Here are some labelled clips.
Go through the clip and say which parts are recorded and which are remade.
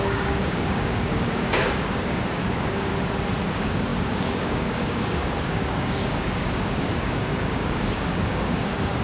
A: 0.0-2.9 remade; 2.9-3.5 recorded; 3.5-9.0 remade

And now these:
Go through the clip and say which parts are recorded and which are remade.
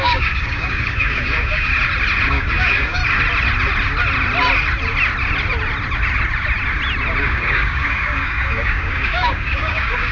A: 0.0-1.7 remade; 1.7-2.3 recorded; 2.3-3.0 remade; 3.0-7.2 recorded; 7.2-10.1 remade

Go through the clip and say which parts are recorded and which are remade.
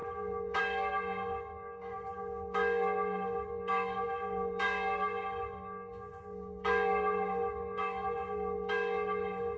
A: 0.0-9.6 remade